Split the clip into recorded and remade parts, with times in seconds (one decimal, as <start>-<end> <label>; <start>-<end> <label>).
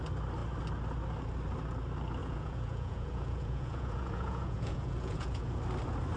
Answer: 0.0-2.2 recorded; 2.2-5.6 remade; 5.6-6.2 recorded